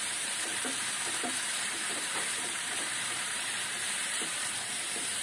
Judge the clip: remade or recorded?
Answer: remade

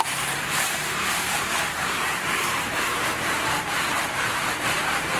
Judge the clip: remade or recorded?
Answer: remade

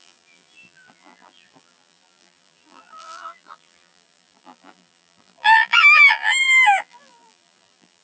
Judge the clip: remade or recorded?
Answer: remade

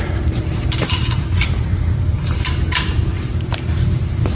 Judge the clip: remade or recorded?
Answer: remade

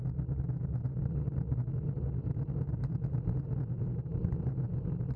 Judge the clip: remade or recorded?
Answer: recorded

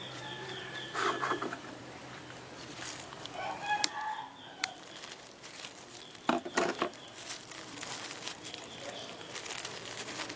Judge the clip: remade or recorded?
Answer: remade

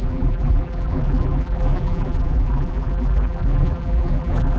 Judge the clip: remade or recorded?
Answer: remade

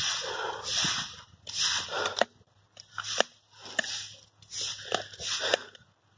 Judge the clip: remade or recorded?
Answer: recorded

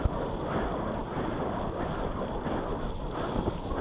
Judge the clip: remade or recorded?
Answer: recorded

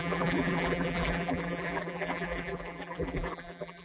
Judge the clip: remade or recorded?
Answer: remade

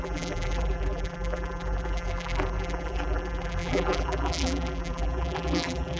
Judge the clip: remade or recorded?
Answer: remade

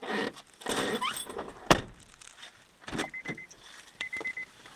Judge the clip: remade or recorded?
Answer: remade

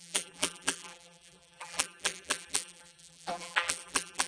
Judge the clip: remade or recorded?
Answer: remade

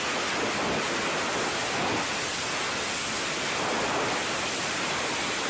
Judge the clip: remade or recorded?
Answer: recorded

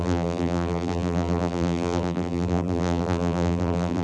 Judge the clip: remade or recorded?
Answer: remade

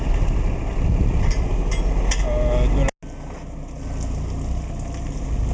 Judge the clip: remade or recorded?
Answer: recorded